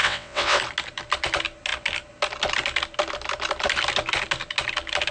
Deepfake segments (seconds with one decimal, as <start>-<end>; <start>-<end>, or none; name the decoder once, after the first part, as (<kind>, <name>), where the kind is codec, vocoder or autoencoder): 0.0-0.6 (vocoder, WaveNeXt)